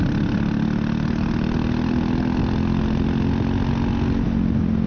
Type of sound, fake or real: real